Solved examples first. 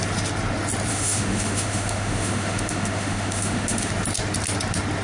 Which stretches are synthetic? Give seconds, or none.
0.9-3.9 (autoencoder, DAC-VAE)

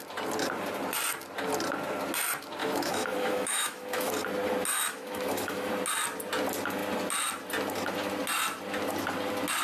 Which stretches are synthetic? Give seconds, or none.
2.6-4.1 (autoencoder, DAC-VAE); 4.7-5.7

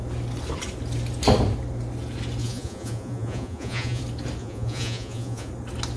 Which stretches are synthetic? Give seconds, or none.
2.4-4.0 (vocoder, Vocos); 4.4-5.5

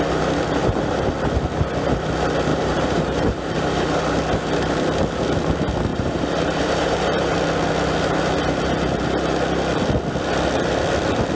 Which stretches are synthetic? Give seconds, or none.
0.6-1.1 (vocoder, BigVGAN v2); 2.5-4.0; 5.9-7.3

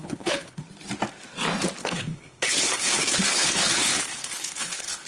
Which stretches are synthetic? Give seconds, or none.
0.0-0.6 (codec, HILCodec); 1.8-5.1